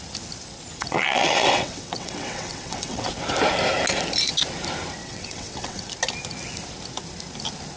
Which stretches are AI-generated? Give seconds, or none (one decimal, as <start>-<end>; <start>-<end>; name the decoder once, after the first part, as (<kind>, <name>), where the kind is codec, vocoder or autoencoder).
0.8-3.1 (vocoder, WaveNeXt); 5.0-5.9